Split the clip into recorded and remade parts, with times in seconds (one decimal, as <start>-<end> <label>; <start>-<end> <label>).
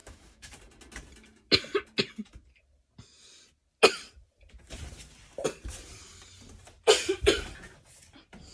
0.0-0.5 remade; 0.5-8.5 recorded